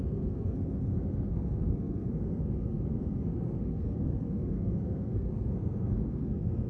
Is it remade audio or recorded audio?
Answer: remade